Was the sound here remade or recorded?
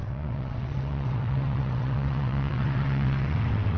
remade